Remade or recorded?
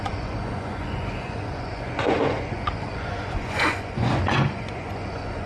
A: remade